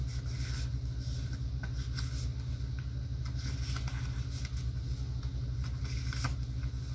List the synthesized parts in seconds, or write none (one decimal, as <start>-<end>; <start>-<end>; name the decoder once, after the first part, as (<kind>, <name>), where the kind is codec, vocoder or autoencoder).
none